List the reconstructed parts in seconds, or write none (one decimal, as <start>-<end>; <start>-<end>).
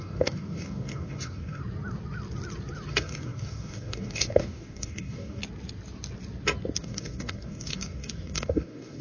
0.0-1.6; 2.9-5.4; 6.8-9.0